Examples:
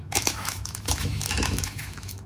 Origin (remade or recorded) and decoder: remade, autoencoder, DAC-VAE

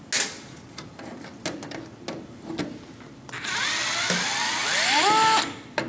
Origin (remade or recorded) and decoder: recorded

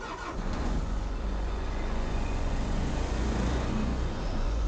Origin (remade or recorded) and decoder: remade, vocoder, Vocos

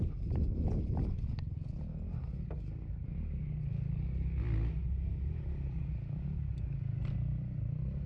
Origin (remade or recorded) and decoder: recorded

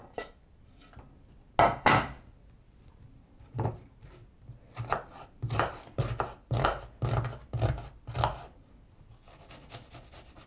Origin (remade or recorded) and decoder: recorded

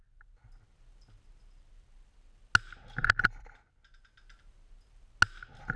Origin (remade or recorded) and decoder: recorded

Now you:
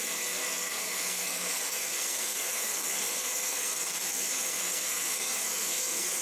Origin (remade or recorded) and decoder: remade, codec, SNAC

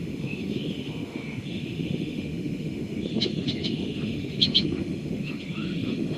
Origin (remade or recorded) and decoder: remade, autoencoder, DAC-VAE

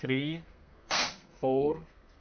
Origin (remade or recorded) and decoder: remade, codec, SNAC